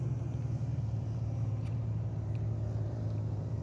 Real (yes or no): no